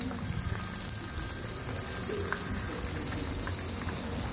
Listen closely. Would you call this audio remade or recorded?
recorded